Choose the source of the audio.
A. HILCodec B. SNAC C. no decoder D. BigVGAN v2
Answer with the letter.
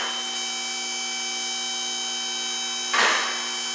C